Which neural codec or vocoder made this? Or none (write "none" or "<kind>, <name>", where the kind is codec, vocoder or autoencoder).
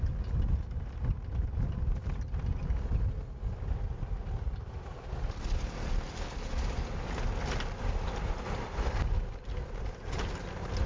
none